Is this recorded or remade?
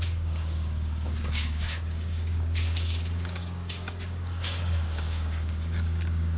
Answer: remade